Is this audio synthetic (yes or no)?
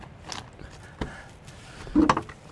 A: no